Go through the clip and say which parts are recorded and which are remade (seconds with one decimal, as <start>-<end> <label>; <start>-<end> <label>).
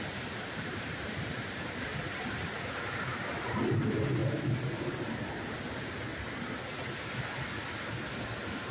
0.0-4.2 remade; 4.2-4.8 recorded; 4.8-6.1 remade; 6.1-8.7 recorded